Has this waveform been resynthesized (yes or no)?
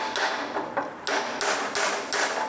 no